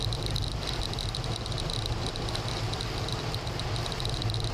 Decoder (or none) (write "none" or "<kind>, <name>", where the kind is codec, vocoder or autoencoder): none